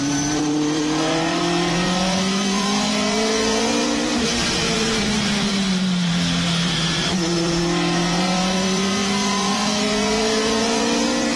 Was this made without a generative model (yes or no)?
no